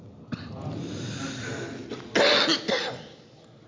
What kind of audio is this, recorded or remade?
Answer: recorded